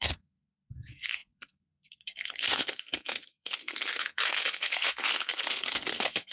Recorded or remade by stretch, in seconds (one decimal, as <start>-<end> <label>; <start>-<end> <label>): 0.0-6.3 remade